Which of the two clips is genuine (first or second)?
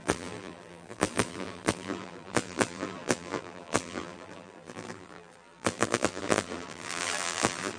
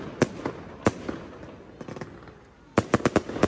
second